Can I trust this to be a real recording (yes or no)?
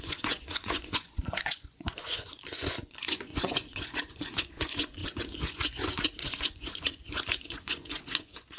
no